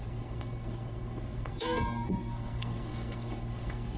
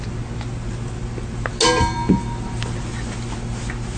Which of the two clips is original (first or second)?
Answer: second